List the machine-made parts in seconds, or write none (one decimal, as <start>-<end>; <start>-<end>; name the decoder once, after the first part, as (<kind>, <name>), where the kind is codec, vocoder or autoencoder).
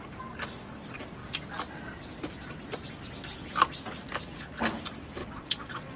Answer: 5.2-6.0 (vocoder, Vocos)